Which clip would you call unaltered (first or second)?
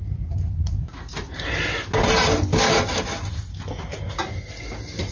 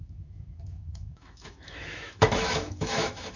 first